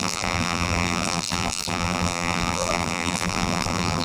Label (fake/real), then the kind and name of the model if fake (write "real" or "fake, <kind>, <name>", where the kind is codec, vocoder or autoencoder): fake, vocoder, BigVGAN v2